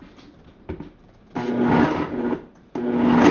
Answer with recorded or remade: recorded